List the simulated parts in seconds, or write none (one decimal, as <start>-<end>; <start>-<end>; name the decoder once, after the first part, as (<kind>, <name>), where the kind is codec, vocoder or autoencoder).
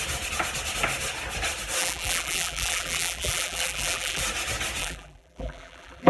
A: 1.8-4.2 (vocoder, BigVGAN v2); 4.8-6.1